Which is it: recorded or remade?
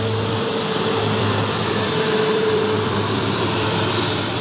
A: remade